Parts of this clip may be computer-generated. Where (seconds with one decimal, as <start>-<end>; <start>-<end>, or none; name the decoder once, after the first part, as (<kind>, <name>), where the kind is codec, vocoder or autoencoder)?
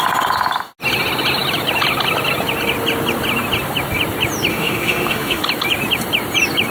4.5-5.4 (autoencoder, DAC-VAE)